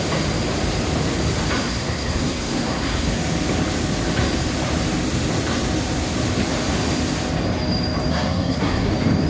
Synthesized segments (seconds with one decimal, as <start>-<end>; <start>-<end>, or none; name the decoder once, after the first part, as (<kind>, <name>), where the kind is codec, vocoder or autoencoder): 1.6-3.2 (codec, SNAC); 8.1-8.9